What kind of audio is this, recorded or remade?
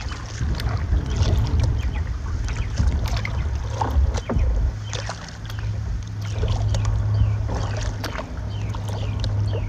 recorded